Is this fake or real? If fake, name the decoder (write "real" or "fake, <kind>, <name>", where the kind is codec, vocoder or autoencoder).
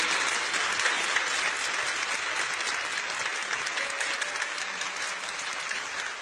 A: real